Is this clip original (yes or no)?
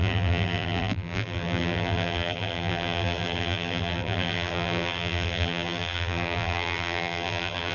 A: no